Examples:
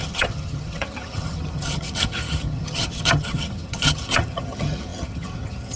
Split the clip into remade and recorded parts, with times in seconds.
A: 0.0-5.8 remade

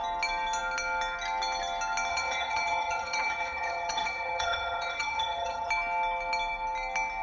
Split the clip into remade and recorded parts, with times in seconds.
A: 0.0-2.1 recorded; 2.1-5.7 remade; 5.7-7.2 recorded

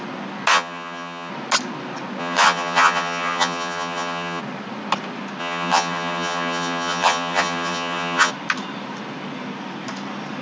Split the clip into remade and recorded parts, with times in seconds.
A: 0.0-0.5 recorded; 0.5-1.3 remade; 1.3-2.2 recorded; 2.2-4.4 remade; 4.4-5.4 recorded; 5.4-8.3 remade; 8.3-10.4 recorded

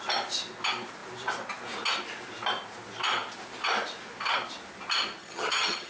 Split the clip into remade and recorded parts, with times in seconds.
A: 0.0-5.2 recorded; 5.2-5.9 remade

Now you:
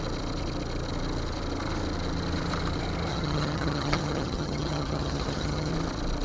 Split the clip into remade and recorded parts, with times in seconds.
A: 0.0-3.1 recorded; 3.1-5.7 remade; 5.7-6.2 recorded

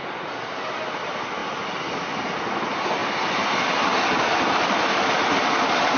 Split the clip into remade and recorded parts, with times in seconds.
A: 0.0-6.0 recorded

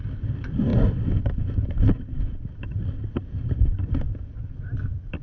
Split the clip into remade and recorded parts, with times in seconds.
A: 0.0-5.2 recorded